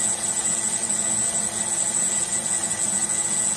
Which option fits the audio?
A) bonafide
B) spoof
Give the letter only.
B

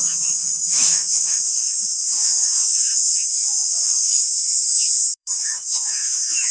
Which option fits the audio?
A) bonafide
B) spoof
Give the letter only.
B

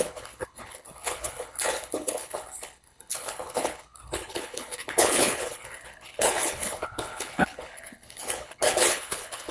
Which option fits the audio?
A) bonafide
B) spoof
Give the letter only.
B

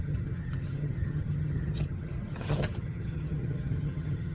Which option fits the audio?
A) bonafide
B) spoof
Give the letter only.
B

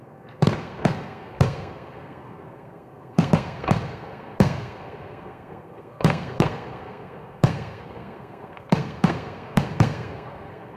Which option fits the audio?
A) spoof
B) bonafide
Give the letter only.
A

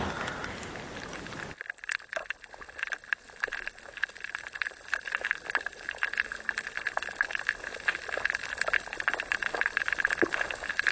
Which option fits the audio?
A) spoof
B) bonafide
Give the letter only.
B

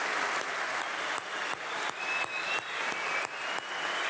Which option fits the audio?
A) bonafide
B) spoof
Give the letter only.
A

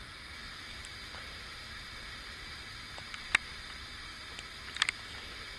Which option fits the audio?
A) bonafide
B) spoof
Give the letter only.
A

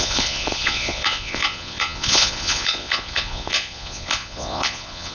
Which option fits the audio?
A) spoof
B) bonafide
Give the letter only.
A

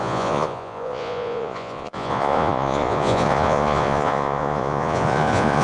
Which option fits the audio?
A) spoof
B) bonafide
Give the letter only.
A